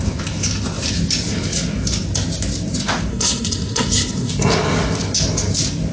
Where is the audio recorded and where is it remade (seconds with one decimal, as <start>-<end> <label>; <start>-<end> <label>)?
0.0-3.1 recorded; 3.1-4.3 remade; 4.3-5.9 recorded